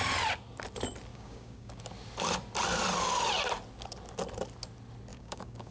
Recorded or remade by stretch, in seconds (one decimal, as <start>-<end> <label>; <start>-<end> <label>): 0.0-1.1 recorded; 1.1-1.8 remade; 1.8-5.1 recorded; 5.1-5.7 remade